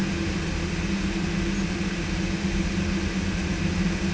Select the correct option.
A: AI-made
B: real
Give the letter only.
B